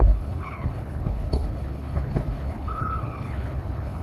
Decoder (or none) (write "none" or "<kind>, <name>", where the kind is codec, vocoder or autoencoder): codec, HILCodec